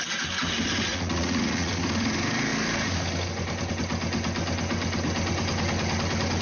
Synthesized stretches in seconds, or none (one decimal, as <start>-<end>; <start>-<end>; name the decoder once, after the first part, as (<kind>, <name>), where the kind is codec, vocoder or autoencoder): 0.9-1.7 (vocoder, Vocos)